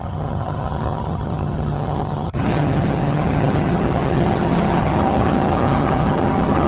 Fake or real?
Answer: fake